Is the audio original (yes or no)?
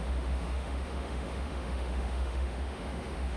no